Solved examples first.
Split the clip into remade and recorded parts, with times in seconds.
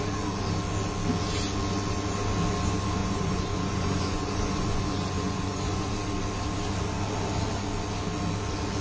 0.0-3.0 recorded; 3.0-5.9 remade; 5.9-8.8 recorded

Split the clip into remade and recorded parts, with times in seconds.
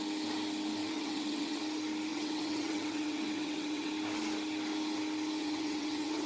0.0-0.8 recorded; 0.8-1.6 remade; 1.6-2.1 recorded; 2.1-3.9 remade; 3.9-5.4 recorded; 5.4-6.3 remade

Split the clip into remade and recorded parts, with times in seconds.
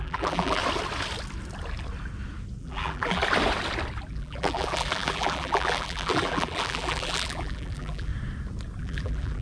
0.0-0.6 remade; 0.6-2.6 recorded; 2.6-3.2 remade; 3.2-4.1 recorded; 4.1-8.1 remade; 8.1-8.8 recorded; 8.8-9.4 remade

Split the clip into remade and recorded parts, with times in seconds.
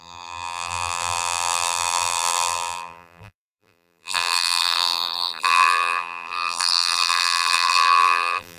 0.0-8.6 remade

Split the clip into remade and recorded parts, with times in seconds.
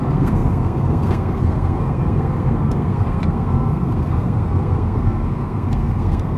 0.0-6.4 remade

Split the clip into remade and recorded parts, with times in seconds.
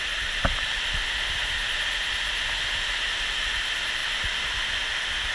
0.0-5.3 recorded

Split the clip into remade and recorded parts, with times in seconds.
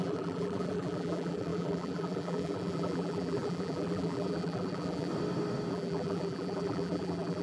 0.0-5.1 remade; 5.1-5.7 recorded; 5.7-7.4 remade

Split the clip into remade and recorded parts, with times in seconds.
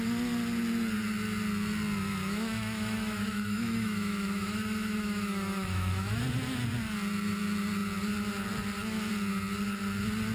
0.0-2.2 recorded; 2.2-6.2 remade; 6.2-10.3 recorded